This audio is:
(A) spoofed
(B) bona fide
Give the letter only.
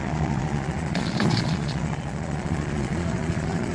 A